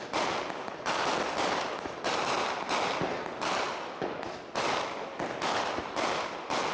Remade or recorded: recorded